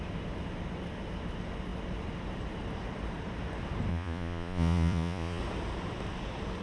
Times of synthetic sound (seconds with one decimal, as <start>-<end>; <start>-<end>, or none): 3.9-5.4